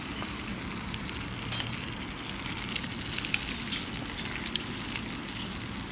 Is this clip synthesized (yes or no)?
no